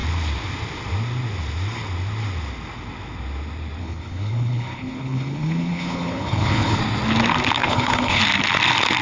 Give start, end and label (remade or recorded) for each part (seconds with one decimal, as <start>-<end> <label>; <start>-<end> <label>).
0.0-3.8 recorded; 3.8-6.8 remade; 6.8-7.6 recorded; 7.6-8.2 remade; 8.2-9.0 recorded